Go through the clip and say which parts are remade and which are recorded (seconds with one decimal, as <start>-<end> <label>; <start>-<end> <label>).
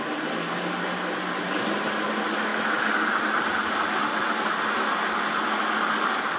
0.0-4.1 recorded; 4.1-4.6 remade; 4.6-6.4 recorded